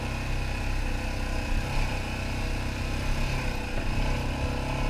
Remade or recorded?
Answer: recorded